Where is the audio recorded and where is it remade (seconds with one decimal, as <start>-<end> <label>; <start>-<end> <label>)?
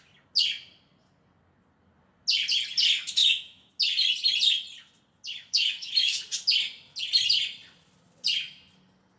0.0-3.2 recorded; 3.2-3.7 remade; 3.7-5.4 recorded; 5.4-6.2 remade; 6.2-9.2 recorded